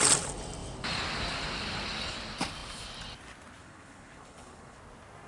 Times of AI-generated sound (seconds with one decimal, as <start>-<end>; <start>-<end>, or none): 3.6-4.8